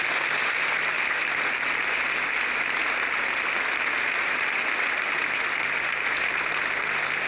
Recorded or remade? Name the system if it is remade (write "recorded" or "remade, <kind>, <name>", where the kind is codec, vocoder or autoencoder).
recorded